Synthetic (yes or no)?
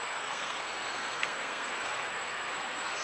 yes